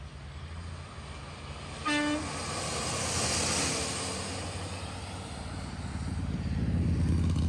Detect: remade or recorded recorded